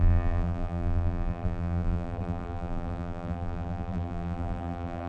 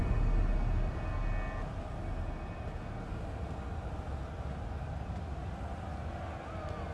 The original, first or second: second